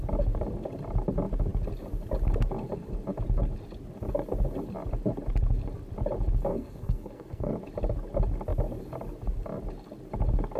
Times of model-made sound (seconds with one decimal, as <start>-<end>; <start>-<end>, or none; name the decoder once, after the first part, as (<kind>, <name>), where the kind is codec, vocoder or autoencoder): 6.5-7.5 (codec, SNAC)